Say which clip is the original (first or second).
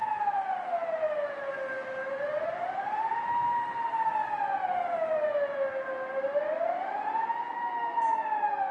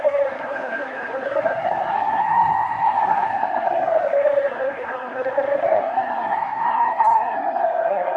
first